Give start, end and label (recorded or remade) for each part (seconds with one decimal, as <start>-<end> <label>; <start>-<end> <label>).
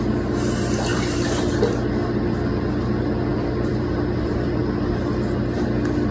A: 0.0-0.9 recorded; 0.9-1.5 remade; 1.5-2.0 recorded; 2.0-2.5 remade; 2.5-3.3 recorded; 3.3-4.6 remade; 4.6-6.1 recorded